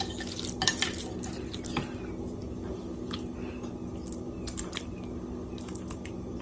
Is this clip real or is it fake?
real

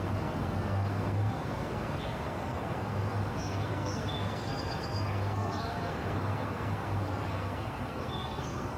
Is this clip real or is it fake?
fake